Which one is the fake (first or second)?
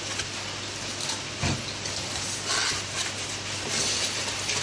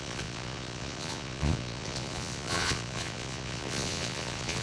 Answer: second